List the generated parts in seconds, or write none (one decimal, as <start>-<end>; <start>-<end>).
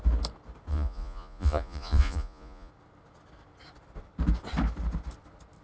0.7-2.7